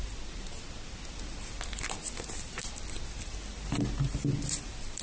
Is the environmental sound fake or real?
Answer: real